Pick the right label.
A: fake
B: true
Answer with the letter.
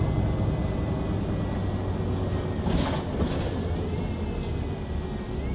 B